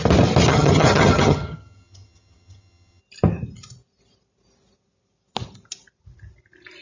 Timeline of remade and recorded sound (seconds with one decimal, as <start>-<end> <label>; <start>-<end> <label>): 0.0-0.5 recorded; 0.5-3.0 remade; 3.0-6.8 recorded